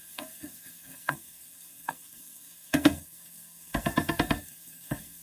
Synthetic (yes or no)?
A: yes